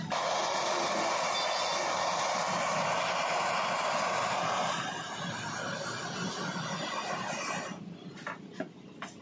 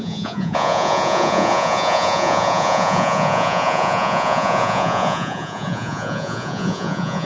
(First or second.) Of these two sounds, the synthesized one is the second